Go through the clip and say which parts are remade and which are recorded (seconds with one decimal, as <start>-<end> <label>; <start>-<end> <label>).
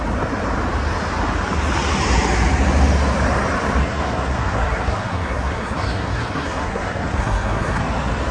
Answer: 0.0-3.8 recorded; 3.8-7.8 remade; 7.8-8.3 recorded